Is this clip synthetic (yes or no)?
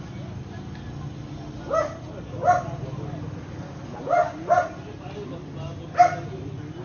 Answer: no